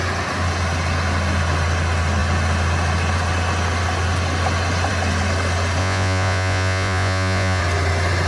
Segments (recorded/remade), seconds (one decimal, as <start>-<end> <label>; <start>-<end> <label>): 0.0-5.8 recorded; 5.8-7.6 remade; 7.6-8.3 recorded